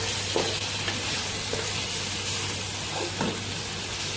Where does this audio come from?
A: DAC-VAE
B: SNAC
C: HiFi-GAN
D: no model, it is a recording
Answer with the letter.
D